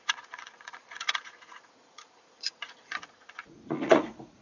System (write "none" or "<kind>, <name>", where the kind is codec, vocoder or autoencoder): vocoder, Vocos